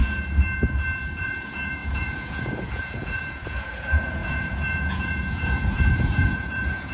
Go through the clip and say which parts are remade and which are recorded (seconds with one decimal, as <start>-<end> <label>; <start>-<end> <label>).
0.0-1.2 recorded; 1.2-6.9 remade